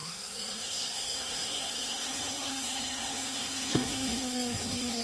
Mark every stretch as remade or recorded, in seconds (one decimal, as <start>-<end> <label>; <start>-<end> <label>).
0.0-5.0 remade